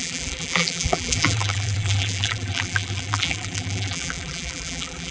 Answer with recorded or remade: remade